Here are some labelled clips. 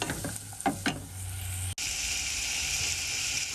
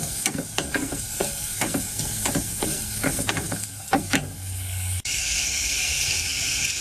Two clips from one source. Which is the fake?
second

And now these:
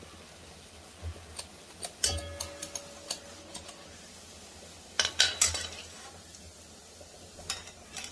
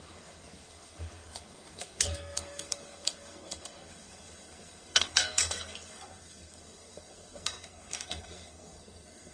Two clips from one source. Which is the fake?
second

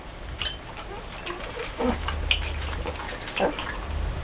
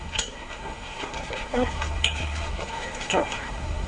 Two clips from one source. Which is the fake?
second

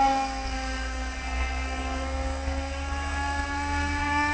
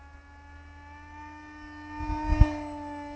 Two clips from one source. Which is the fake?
first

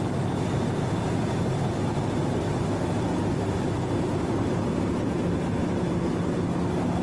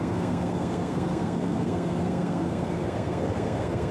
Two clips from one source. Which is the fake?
second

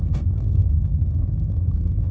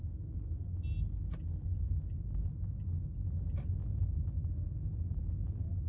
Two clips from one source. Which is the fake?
first